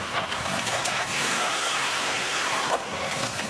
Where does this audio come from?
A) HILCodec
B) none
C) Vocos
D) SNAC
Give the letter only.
D